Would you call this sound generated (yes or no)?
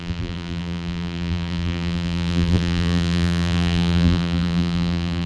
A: yes